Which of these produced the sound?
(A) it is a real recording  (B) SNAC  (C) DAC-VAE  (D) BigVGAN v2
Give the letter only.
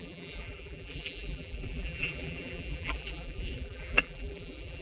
D